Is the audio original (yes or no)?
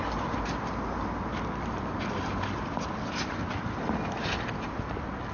yes